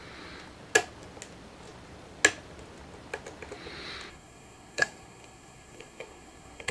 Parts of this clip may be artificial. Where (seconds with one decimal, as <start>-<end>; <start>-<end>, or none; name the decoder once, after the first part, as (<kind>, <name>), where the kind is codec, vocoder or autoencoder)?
4.1-6.7 (codec, SNAC)